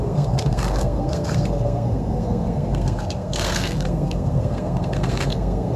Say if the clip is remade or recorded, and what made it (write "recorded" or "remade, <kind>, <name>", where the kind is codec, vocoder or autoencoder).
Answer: remade, codec, SNAC